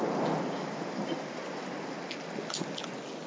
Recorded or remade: recorded